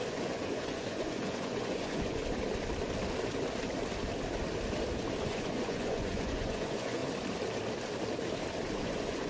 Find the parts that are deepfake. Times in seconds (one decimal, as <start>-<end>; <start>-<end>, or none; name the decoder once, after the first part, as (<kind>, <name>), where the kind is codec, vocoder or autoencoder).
0.0-2.2 (vocoder, Vocos); 5.2-7.0; 8.8-9.3